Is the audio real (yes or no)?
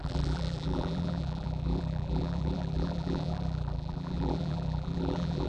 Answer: no